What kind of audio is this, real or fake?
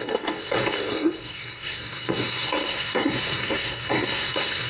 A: fake